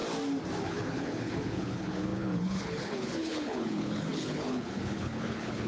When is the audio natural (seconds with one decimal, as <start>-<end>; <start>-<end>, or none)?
0.0-0.6